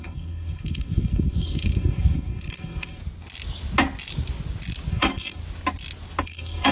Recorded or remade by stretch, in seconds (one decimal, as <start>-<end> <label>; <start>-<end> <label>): 0.0-3.0 remade; 3.0-4.9 recorded; 4.9-5.4 remade; 5.4-6.2 recorded; 6.2-6.7 remade